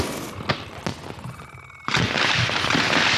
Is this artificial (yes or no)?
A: no